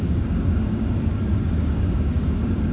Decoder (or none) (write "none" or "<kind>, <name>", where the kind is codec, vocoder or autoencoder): codec, DAC